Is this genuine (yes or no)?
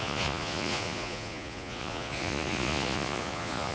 no